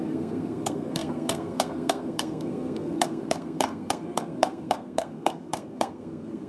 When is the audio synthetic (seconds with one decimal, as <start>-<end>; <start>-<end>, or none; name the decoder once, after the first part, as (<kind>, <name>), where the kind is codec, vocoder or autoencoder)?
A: 0.0-6.5 (codec, SNAC)